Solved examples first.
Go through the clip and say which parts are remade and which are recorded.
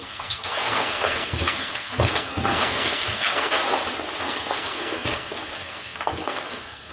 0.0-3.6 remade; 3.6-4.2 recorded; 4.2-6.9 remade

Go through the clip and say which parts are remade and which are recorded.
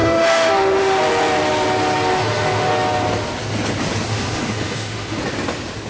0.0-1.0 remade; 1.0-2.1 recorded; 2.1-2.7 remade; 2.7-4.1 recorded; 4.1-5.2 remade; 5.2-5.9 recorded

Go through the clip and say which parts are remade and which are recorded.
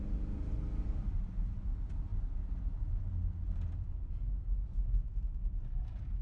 0.0-6.2 recorded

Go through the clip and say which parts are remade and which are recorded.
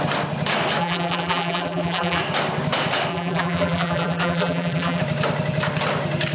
0.0-0.8 recorded; 0.8-2.2 remade; 2.2-3.1 recorded; 3.1-5.0 remade; 5.0-6.3 recorded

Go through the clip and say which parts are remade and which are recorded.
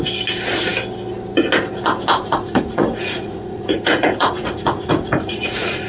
0.0-2.1 recorded; 2.1-5.9 remade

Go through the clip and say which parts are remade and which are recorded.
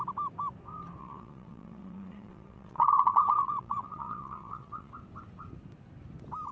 0.0-1.0 recorded; 1.0-4.9 remade; 4.9-6.5 recorded